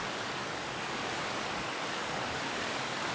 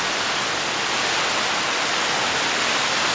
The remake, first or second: first